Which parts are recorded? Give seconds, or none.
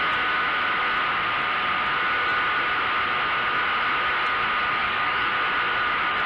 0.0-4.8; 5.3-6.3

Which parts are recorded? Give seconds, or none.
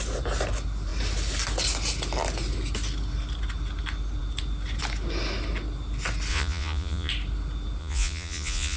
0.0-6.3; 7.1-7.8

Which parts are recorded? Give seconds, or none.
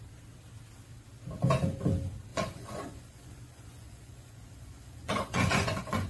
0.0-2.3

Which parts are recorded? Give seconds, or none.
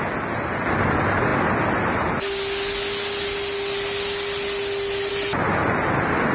0.0-6.3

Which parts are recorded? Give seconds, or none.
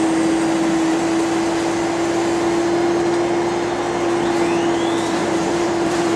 0.0-5.2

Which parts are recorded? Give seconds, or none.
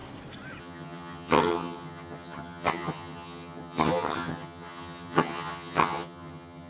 0.0-0.6